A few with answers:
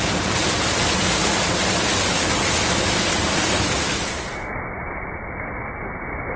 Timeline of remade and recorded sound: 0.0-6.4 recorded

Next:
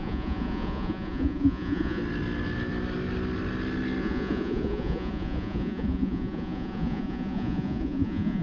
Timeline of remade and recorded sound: 0.0-2.0 remade; 2.0-4.0 recorded; 4.0-8.4 remade

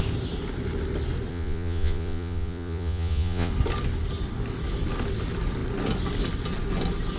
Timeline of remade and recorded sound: 0.0-1.3 recorded; 1.3-3.5 remade; 3.5-7.2 recorded

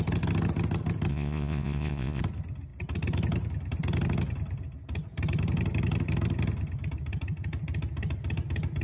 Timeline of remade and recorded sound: 0.0-1.1 recorded; 1.1-2.2 remade; 2.2-8.8 recorded

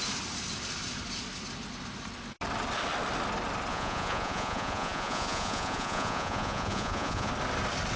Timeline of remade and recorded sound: 0.0-3.7 recorded; 3.7-7.3 remade; 7.3-8.0 recorded

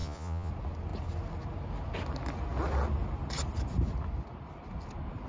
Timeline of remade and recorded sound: 0.0-0.5 remade; 0.5-5.3 recorded